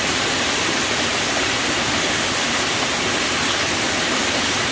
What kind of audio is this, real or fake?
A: real